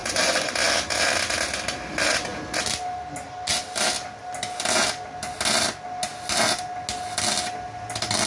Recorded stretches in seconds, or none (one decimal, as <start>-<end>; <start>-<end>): 0.5-8.3